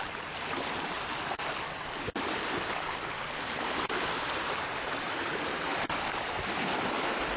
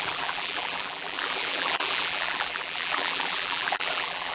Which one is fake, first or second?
second